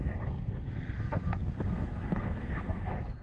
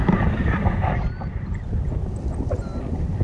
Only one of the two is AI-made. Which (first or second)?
first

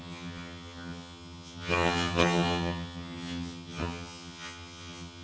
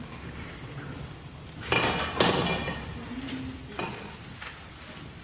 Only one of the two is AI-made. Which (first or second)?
first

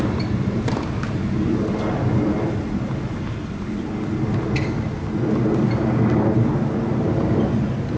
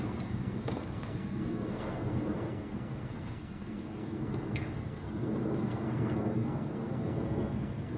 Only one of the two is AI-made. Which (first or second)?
second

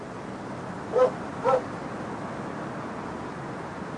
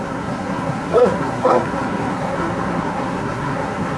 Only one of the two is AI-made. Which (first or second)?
second